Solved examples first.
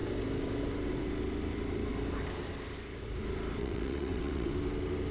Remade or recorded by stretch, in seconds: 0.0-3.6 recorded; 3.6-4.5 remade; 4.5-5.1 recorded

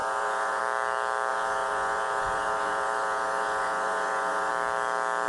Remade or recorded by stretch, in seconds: 0.0-0.6 remade; 0.6-1.3 recorded; 1.3-4.5 remade; 4.5-5.3 recorded

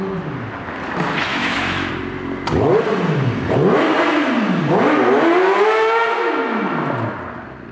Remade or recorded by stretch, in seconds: 0.0-1.3 recorded; 1.3-1.9 remade; 1.9-7.7 recorded

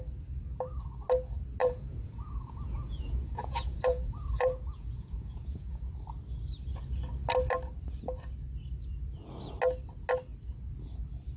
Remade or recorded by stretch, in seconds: 0.0-1.6 recorded; 1.6-5.9 remade; 5.9-11.4 recorded

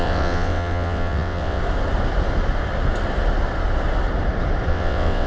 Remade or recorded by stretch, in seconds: 0.0-1.6 remade; 1.6-4.7 recorded; 4.7-5.3 remade

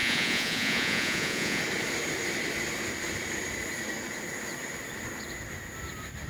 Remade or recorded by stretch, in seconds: 0.0-1.6 remade; 1.6-6.3 recorded

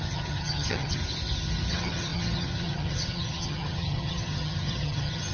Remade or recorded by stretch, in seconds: 0.0-1.0 remade; 1.0-1.7 recorded; 1.7-5.3 remade

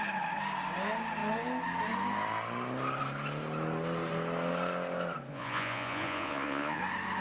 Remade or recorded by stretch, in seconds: 0.0-5.3 recorded; 5.3-6.8 remade; 6.8-7.2 recorded